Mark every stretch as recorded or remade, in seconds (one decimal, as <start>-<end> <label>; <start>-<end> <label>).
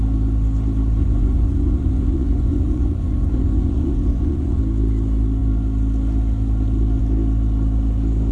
0.0-1.0 recorded; 1.0-4.6 remade; 4.6-8.3 recorded